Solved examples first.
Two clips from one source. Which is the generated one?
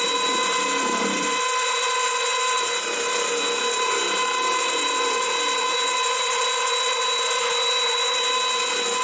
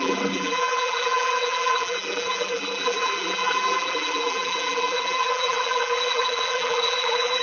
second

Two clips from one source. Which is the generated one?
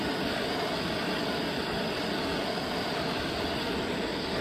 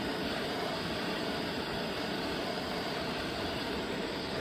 second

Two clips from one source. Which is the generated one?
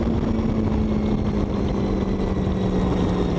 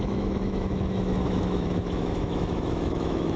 second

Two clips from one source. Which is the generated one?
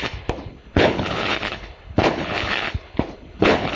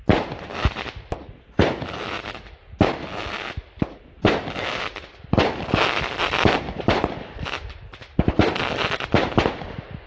first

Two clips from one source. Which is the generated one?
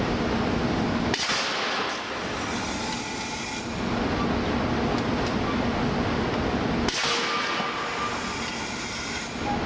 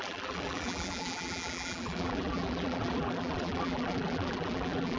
second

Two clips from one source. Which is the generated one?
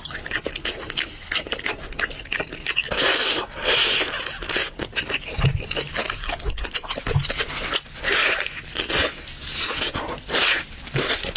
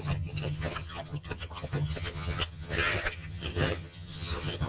second